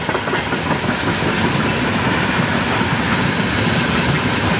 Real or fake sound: real